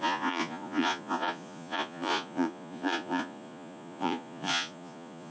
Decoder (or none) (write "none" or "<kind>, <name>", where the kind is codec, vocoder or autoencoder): vocoder, Vocos